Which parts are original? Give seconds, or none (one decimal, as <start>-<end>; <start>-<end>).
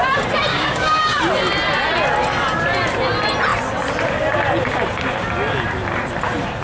0.0-0.5; 1.2-6.6